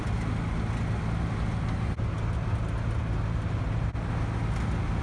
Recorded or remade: recorded